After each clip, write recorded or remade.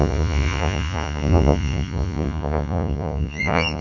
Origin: remade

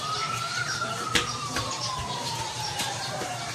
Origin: remade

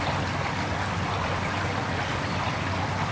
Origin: recorded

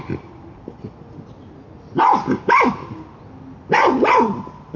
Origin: recorded